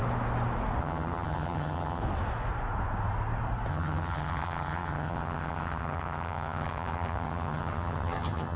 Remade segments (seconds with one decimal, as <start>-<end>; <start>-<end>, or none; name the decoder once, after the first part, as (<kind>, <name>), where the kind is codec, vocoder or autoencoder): 0.8-2.0 (vocoder, HiFi-GAN); 3.7-8.6